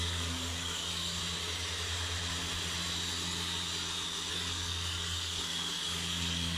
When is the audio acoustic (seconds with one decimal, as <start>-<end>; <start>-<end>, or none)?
1.2-4.3